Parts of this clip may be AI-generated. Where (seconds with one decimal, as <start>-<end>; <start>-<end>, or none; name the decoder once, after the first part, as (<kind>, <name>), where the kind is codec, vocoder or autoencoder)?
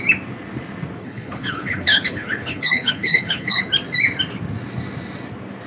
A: 1.0-3.6 (codec, HILCodec)